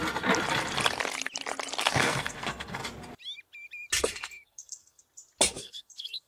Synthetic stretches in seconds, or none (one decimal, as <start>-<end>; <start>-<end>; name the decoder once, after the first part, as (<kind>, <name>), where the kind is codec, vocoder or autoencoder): 1.8-2.8 (codec, SNAC); 4.0-5.0; 5.6-6.3